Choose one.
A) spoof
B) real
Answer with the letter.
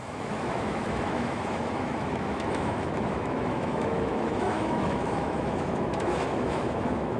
A